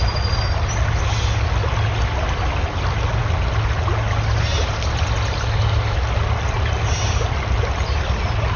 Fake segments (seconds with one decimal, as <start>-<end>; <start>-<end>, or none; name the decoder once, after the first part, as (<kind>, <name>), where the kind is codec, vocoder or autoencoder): none

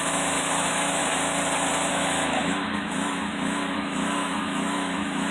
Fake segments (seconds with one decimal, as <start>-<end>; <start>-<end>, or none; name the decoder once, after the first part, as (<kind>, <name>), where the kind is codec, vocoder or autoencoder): 0.0-1.0 (autoencoder, DAC-VAE); 1.9-5.3